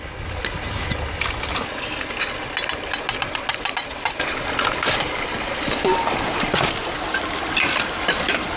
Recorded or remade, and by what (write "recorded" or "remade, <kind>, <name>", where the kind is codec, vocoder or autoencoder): recorded